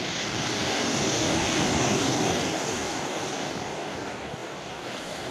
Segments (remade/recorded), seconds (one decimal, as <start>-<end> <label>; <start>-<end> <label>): 0.0-5.3 remade